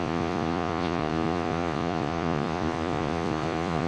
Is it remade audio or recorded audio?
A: remade